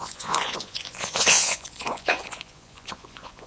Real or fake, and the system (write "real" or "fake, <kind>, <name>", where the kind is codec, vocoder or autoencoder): fake, vocoder, Vocos